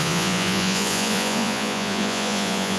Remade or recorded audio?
remade